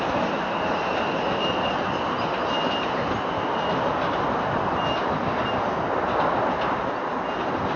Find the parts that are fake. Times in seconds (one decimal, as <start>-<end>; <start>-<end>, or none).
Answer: none